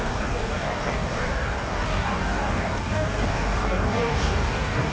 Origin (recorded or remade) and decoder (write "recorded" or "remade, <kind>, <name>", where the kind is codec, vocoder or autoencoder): remade, codec, DAC